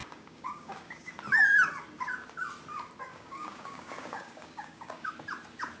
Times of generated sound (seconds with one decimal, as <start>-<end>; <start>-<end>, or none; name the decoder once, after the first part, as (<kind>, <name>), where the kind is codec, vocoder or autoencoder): 0.0-1.1 (codec, DAC); 3.1-5.1